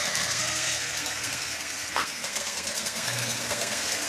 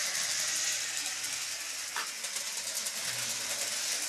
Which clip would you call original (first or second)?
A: second